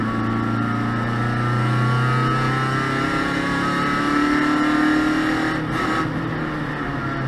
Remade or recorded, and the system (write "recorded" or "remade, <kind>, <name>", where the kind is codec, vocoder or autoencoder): recorded